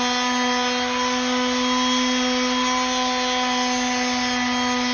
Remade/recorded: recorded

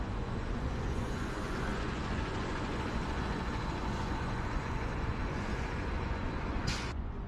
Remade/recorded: remade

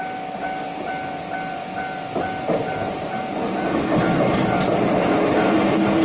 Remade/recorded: recorded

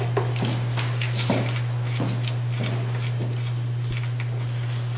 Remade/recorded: recorded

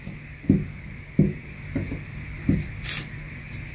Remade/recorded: recorded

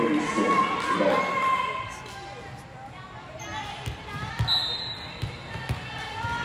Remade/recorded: recorded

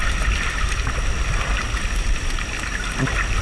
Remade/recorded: recorded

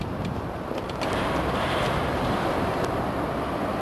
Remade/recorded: recorded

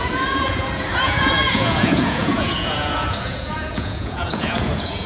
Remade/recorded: remade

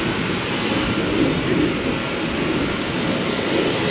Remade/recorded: recorded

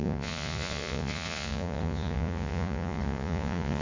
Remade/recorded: remade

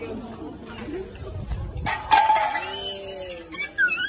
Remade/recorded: recorded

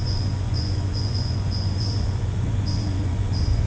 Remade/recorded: remade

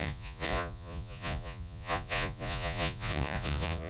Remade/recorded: remade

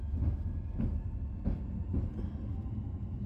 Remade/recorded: recorded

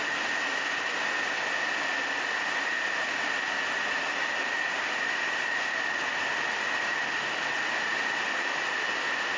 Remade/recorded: recorded